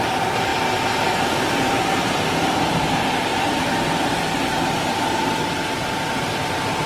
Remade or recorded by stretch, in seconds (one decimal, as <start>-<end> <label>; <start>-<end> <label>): 0.0-0.5 remade; 0.5-1.2 recorded; 1.2-3.3 remade; 3.3-5.0 recorded; 5.0-6.9 remade